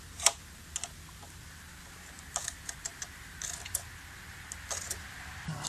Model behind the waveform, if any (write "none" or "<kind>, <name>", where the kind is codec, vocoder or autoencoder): none